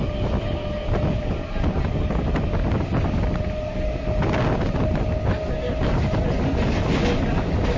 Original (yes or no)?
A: yes